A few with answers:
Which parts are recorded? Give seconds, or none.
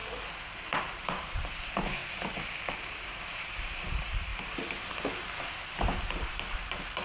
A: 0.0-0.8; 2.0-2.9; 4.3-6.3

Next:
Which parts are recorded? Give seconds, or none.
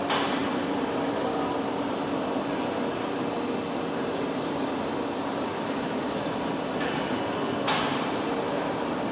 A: 0.0-9.1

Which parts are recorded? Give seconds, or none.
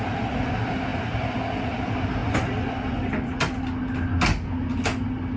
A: 0.0-0.9; 1.8-5.4